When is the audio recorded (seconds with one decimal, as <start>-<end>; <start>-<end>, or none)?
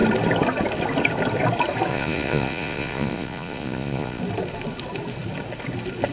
0.0-1.9; 4.2-6.1